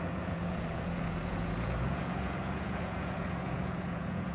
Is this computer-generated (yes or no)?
yes